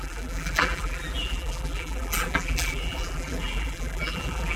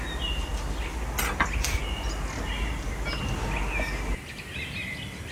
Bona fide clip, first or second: second